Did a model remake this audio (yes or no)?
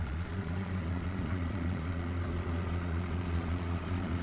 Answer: yes